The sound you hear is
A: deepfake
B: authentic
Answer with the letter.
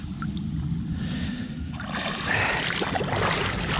B